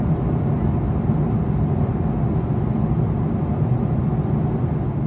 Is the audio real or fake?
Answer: real